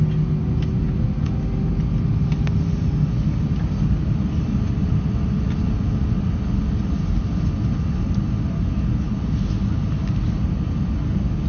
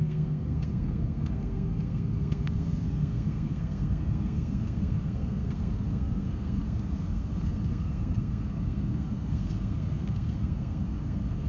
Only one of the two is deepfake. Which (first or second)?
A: second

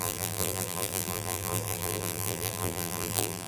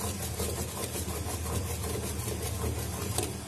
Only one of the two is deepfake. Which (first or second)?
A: first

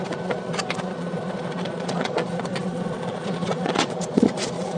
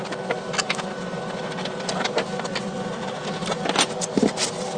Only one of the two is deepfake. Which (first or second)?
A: first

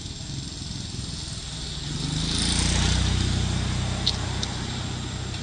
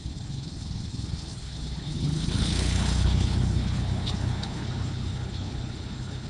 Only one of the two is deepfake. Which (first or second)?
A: second